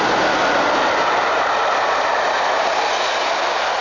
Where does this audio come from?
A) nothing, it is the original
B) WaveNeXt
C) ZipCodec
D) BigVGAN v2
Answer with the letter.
A